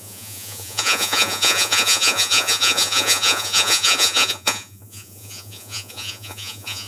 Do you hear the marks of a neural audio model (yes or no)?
yes